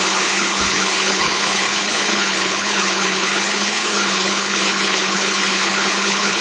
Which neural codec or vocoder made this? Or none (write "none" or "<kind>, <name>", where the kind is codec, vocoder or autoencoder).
codec, HILCodec